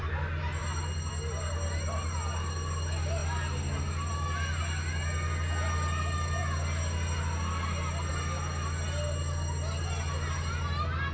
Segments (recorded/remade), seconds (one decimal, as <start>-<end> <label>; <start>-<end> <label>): 0.0-11.1 recorded